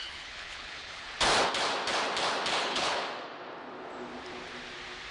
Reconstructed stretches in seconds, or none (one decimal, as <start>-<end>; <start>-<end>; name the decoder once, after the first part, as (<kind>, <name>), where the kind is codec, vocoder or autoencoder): 0.0-1.1 (codec, HILCodec); 2.6-3.0